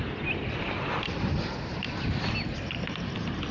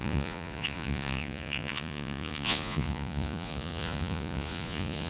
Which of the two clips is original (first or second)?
first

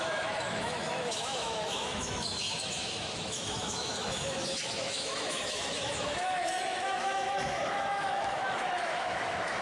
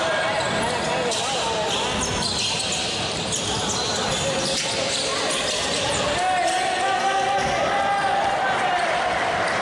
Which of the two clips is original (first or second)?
second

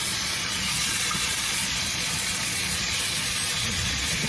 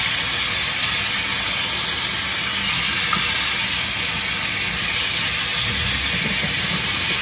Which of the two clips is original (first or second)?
second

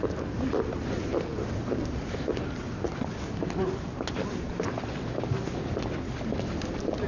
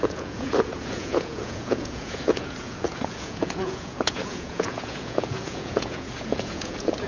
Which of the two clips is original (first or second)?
first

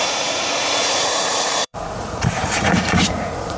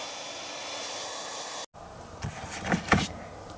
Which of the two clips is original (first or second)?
second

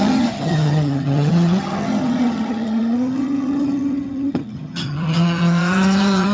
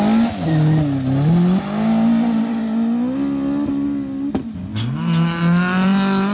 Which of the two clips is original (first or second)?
second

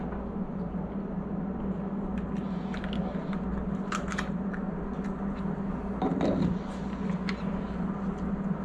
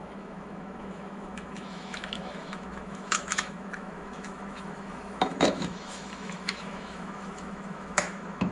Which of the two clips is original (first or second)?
first